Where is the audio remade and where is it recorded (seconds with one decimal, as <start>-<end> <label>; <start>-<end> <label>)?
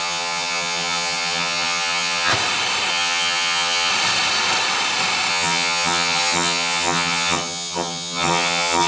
0.0-2.3 remade; 2.3-2.9 recorded; 2.9-3.9 remade; 3.9-5.3 recorded; 5.3-8.9 remade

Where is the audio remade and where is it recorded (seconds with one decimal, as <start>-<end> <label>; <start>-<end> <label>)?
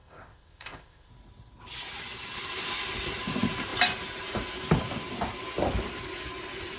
0.0-1.1 remade; 1.1-6.8 recorded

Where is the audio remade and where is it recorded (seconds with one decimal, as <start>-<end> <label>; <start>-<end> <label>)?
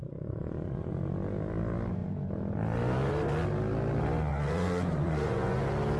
0.0-0.9 remade; 0.9-4.3 recorded; 4.3-5.6 remade; 5.6-6.0 recorded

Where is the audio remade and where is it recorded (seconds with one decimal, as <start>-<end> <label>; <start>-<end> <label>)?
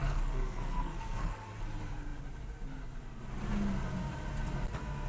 0.0-1.5 remade; 1.5-5.1 recorded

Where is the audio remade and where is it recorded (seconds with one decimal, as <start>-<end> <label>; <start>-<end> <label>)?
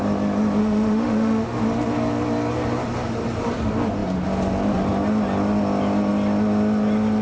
0.0-0.6 recorded; 0.6-1.6 remade; 1.6-7.2 recorded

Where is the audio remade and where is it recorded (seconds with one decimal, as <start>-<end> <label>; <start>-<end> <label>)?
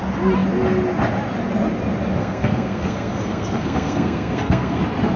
0.0-2.2 recorded; 2.2-4.8 remade; 4.8-5.2 recorded